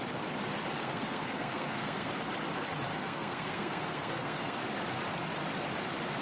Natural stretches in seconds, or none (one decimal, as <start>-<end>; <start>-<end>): 0.0-0.8; 2.1-2.9; 4.7-6.2